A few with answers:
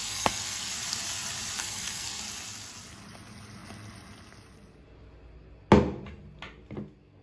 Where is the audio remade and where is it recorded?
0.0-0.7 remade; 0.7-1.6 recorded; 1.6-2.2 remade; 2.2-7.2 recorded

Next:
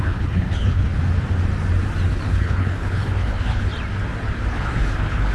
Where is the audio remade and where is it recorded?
0.0-1.0 remade; 1.0-2.1 recorded; 2.1-3.7 remade; 3.7-4.5 recorded; 4.5-5.3 remade

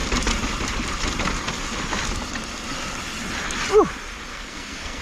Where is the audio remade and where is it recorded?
0.0-4.3 recorded; 4.3-5.0 remade

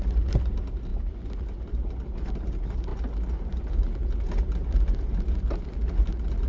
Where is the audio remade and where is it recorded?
0.0-6.5 recorded

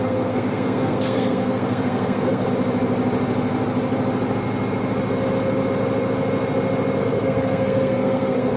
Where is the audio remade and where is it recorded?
0.0-2.5 remade; 2.5-7.0 recorded; 7.0-8.6 remade

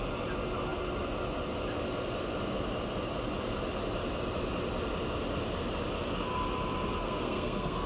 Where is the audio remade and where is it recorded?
0.0-7.0 recorded; 7.0-7.9 remade